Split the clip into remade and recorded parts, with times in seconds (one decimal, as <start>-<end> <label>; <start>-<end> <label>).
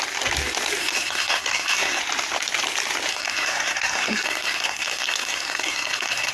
0.0-0.8 recorded; 0.8-2.0 remade; 2.0-3.1 recorded; 3.1-6.3 remade